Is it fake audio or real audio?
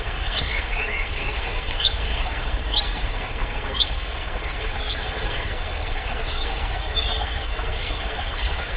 fake